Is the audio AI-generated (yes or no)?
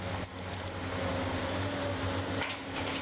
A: no